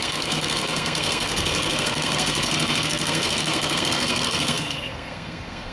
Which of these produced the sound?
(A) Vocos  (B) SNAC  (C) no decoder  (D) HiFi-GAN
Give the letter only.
B